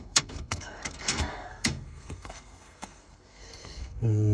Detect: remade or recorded remade